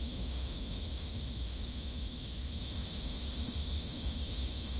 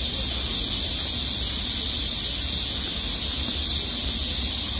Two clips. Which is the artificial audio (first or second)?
first